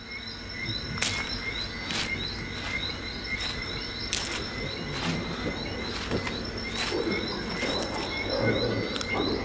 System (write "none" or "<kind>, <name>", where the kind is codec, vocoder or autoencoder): none